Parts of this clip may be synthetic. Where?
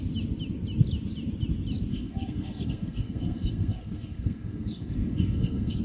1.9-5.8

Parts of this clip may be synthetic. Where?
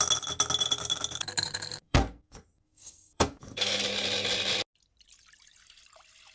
1.8-3.8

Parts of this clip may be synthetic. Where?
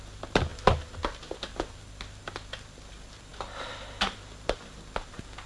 none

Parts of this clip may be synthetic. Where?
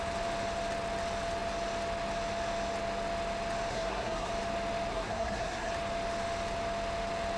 3.7-4.3; 4.9-5.7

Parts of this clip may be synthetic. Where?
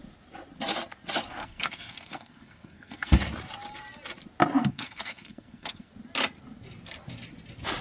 1.4-3.2; 4.6-5.9